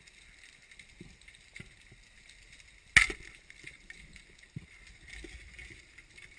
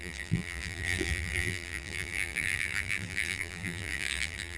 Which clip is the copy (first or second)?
second